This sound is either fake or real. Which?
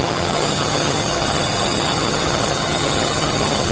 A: fake